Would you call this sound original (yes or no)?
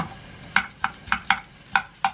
yes